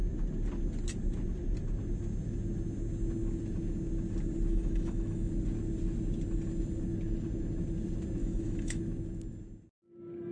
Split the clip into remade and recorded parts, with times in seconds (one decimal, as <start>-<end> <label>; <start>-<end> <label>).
0.0-4.5 recorded; 4.5-5.3 remade; 5.3-8.2 recorded; 8.2-8.8 remade; 8.8-10.3 recorded